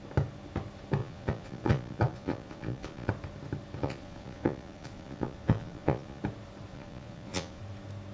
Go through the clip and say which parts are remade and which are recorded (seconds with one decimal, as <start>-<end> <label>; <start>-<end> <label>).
0.0-1.0 recorded; 1.0-3.1 remade; 3.1-3.8 recorded; 3.8-6.2 remade; 6.2-6.7 recorded; 6.7-7.6 remade; 7.6-8.1 recorded